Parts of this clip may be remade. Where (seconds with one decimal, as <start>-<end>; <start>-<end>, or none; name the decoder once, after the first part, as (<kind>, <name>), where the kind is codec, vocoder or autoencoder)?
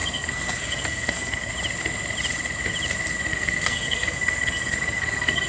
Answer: 0.0-1.5 (codec, SNAC); 3.3-5.5